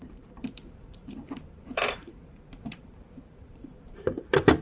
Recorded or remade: remade